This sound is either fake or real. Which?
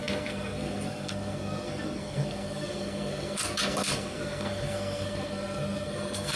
fake